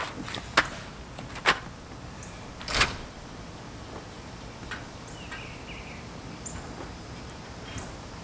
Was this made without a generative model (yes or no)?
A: yes